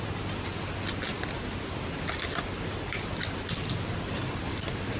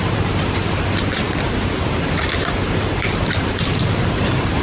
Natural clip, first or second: first